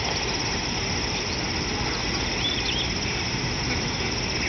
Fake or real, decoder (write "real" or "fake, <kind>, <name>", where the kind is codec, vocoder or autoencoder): real